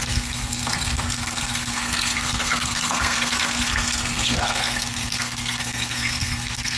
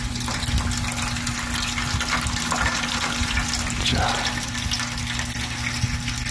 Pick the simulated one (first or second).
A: first